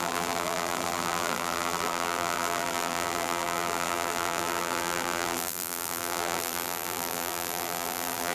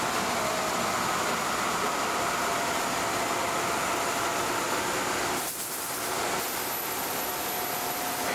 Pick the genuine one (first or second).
second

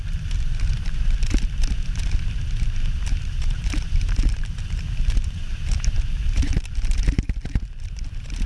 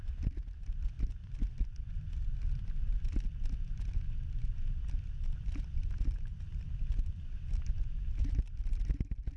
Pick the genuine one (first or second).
second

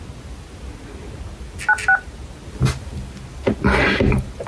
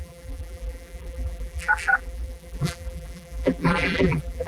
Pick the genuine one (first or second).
first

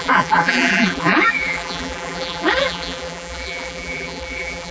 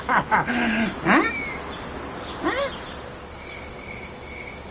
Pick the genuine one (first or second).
second